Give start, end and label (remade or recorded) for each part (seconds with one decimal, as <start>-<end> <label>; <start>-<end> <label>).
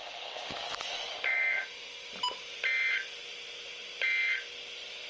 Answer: 0.0-0.7 remade; 0.7-5.1 recorded